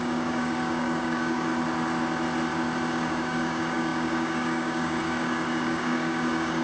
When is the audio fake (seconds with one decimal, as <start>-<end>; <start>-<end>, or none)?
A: 0.0-1.5; 2.9-6.6